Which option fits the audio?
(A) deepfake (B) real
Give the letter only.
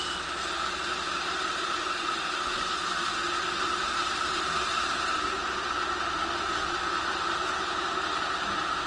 B